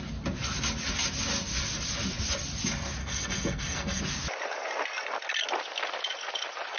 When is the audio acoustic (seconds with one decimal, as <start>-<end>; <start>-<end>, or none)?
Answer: 0.0-3.0; 4.0-6.8